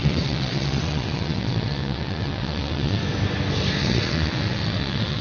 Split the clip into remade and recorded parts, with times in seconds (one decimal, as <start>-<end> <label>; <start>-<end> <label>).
0.0-3.0 remade; 3.0-3.8 recorded; 3.8-5.2 remade